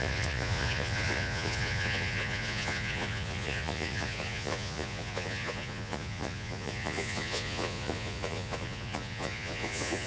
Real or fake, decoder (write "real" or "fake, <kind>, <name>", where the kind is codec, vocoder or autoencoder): fake, vocoder, Vocos